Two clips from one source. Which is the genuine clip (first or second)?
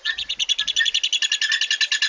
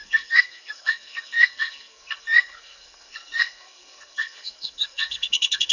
first